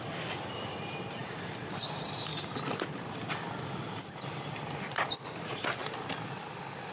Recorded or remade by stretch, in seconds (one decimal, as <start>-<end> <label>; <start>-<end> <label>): 0.0-1.2 recorded; 1.2-1.7 remade; 1.7-6.9 recorded